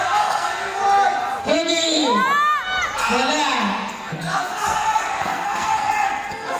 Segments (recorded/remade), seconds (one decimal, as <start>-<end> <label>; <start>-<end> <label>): 0.0-0.8 remade; 0.8-1.4 recorded; 1.4-2.0 remade; 2.0-3.9 recorded; 3.9-6.6 remade